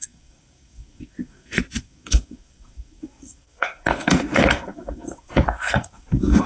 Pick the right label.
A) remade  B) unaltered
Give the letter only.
A